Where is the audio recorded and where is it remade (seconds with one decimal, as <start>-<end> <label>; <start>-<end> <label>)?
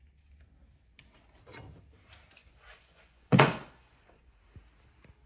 0.0-2.4 recorded; 2.4-4.4 remade; 4.4-5.3 recorded